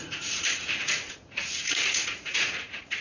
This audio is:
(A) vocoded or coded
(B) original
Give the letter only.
A